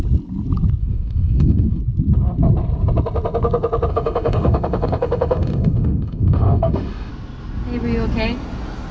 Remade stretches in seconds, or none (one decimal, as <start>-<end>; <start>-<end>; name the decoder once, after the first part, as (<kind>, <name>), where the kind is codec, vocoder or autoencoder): 0.8-1.8 (autoencoder, DAC-VAE); 3.9-7.1

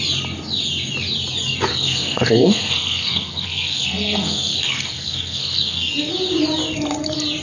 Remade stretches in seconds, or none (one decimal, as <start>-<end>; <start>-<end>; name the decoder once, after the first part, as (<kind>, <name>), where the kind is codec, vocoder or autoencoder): 1.7-6.1 (codec, SNAC)